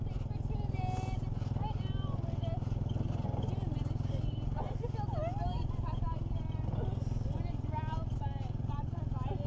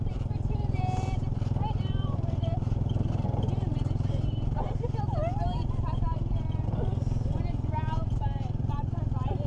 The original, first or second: first